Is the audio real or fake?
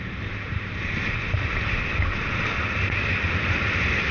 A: fake